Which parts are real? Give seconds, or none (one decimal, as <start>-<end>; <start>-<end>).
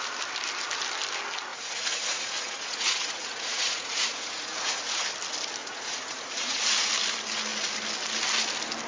0.0-1.5; 5.0-5.6; 6.9-8.9